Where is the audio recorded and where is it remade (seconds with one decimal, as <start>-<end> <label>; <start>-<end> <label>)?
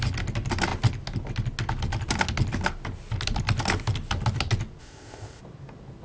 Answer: 0.0-4.8 recorded; 4.8-5.4 remade; 5.4-6.0 recorded